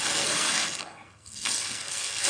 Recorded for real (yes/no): no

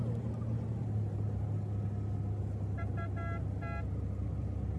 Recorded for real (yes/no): yes